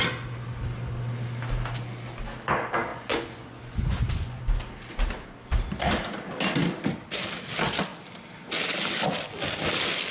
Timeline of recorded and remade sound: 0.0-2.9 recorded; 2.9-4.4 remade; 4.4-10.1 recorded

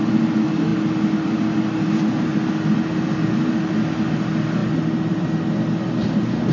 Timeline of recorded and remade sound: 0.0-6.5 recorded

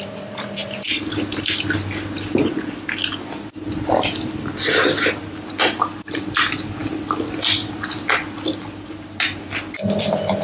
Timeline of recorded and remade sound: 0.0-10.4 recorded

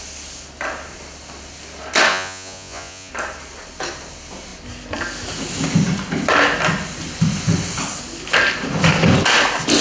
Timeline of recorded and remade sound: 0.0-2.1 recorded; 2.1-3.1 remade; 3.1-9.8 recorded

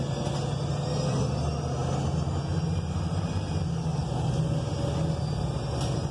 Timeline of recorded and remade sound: 0.0-6.1 recorded

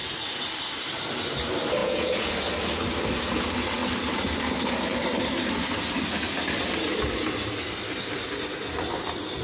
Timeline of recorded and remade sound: 0.0-1.8 recorded; 1.8-2.3 remade; 2.3-9.4 recorded

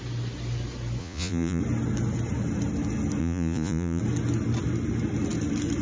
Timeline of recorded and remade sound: 0.0-1.0 recorded; 1.0-1.6 remade; 1.6-3.2 recorded; 3.2-4.0 remade; 4.0-5.8 recorded

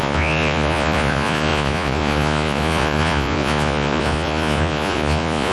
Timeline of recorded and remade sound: 0.0-5.5 remade